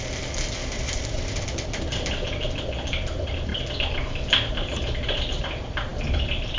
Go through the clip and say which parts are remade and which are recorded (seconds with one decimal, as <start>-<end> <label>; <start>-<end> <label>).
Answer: 0.0-6.6 remade